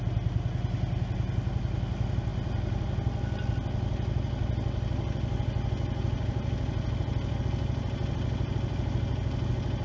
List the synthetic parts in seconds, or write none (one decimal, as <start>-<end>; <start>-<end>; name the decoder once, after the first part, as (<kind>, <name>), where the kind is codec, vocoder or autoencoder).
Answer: none